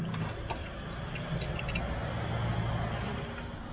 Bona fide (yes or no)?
yes